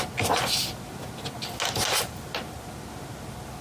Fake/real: real